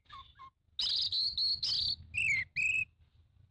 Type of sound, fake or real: real